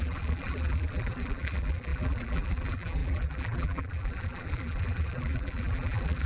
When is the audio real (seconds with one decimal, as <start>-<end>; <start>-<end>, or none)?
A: none